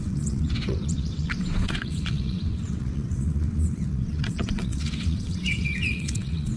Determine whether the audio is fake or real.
fake